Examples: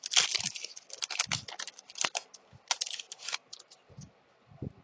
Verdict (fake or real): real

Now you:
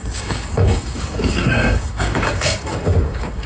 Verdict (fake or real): fake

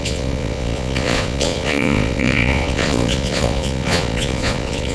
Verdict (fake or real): fake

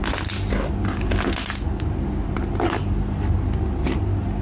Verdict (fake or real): real